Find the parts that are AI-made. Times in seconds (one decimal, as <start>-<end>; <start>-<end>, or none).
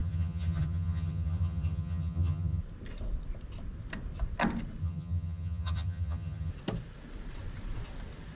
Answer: 0.0-2.6; 4.8-6.5